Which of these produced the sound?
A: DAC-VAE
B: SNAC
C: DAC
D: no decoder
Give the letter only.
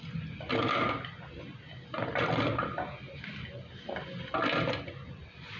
D